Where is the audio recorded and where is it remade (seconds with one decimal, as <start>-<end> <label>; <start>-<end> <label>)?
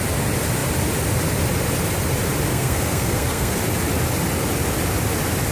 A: 0.0-2.5 recorded; 2.5-3.6 remade; 3.6-5.5 recorded